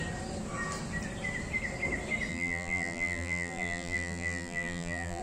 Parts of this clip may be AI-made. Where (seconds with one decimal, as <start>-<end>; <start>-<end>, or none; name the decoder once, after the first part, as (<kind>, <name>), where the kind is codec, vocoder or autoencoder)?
2.3-5.2 (vocoder, BigVGAN v2)